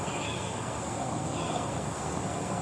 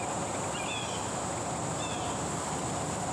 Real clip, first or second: second